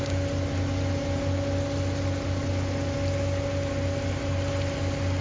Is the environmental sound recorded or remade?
recorded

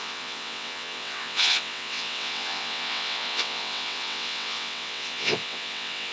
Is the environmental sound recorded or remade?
remade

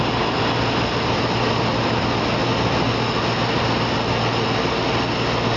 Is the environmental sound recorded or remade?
recorded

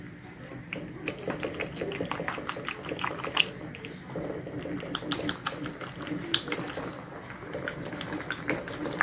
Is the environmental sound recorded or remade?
recorded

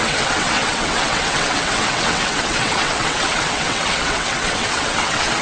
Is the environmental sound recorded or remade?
remade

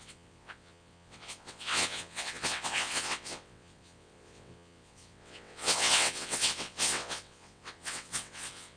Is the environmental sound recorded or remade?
remade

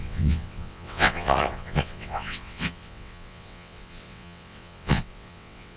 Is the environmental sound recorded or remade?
remade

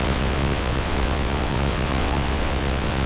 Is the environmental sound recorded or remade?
remade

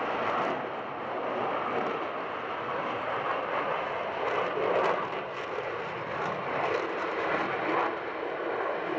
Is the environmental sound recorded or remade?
recorded